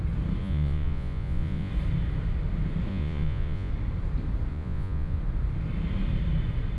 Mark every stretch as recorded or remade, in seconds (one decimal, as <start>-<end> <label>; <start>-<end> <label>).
0.0-0.4 recorded; 0.4-1.7 remade; 1.7-2.9 recorded; 2.9-3.7 remade; 3.7-4.5 recorded; 4.5-5.2 remade; 5.2-6.8 recorded

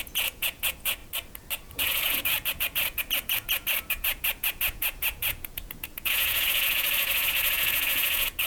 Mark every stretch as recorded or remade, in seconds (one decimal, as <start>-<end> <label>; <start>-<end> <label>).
0.0-1.0 remade; 1.0-1.7 recorded; 1.7-8.5 remade

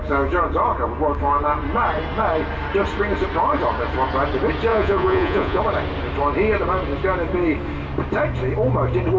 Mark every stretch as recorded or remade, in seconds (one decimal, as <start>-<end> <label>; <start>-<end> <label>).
0.0-4.7 recorded; 4.7-5.6 remade; 5.6-9.2 recorded

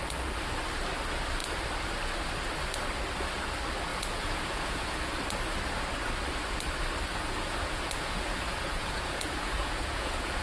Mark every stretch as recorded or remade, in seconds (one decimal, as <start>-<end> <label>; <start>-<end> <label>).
0.0-3.9 recorded; 3.9-5.2 remade; 5.2-7.1 recorded; 7.1-10.4 remade

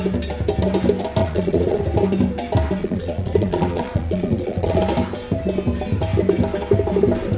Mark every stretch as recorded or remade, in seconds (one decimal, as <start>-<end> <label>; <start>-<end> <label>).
0.0-1.2 recorded; 1.2-1.8 remade; 1.8-2.8 recorded; 2.8-4.8 remade; 4.8-7.4 recorded

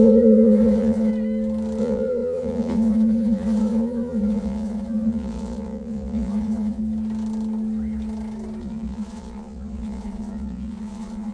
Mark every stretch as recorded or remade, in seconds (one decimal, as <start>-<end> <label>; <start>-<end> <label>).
0.0-1.1 remade; 1.1-1.8 recorded; 1.8-6.8 remade; 6.8-8.6 recorded; 8.6-11.3 remade

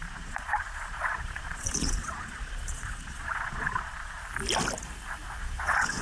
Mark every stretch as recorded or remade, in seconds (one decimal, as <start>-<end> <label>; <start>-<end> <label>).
0.0-4.2 remade; 4.2-5.4 recorded; 5.4-6.0 remade

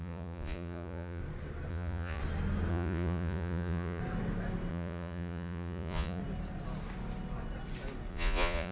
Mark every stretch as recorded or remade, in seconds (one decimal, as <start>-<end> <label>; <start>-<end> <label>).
0.0-1.2 remade; 1.2-1.7 recorded; 1.7-2.2 remade; 2.2-2.7 recorded; 2.7-4.0 remade; 4.0-4.7 recorded; 4.7-6.2 remade; 6.2-8.1 recorded; 8.1-8.7 remade